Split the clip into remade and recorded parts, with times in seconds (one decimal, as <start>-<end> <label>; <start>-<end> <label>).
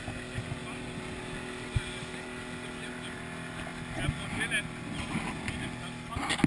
0.0-6.5 recorded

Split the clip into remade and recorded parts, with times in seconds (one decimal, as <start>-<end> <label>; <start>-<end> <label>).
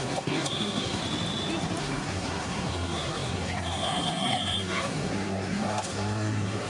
0.0-1.0 remade; 1.0-1.8 recorded; 1.8-6.7 remade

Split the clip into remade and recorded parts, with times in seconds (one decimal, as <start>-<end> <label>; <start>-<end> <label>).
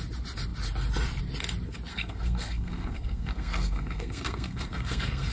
0.0-1.9 recorded; 1.9-5.3 remade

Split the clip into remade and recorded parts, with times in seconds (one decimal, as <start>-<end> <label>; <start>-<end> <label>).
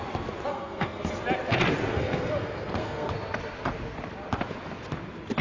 0.0-0.5 recorded; 0.5-1.1 remade; 1.1-1.9 recorded; 1.9-3.1 remade; 3.1-5.4 recorded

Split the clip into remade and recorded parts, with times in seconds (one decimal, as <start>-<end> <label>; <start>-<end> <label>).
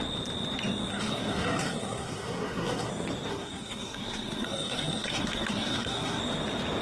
0.0-0.9 recorded; 0.9-2.9 remade; 2.9-3.3 recorded; 3.3-6.2 remade; 6.2-6.8 recorded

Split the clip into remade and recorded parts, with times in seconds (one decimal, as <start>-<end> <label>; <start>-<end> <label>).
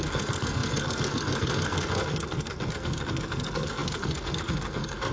0.0-5.1 remade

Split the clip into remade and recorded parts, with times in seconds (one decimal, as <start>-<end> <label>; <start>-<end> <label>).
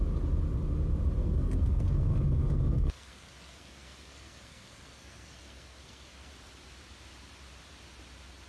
0.0-1.2 recorded; 1.2-6.3 remade; 6.3-8.5 recorded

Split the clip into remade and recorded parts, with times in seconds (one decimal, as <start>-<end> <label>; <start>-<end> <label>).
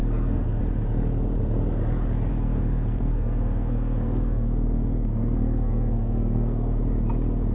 0.0-0.6 remade; 0.6-2.3 recorded; 2.3-6.8 remade; 6.8-7.5 recorded